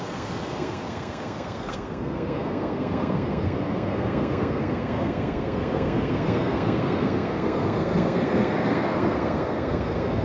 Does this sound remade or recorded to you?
remade